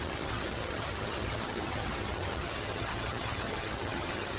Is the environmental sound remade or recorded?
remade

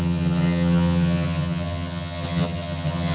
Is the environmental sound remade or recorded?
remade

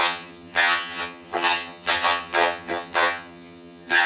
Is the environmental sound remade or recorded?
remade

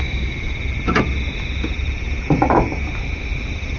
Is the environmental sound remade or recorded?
recorded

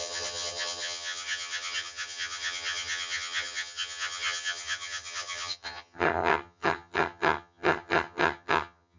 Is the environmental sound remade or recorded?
remade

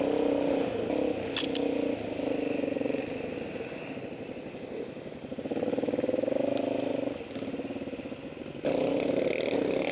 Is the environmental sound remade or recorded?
recorded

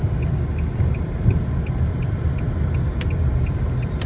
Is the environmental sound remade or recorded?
recorded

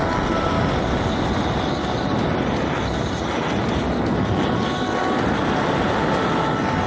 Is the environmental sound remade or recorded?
recorded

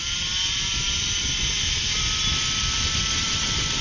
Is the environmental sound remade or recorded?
recorded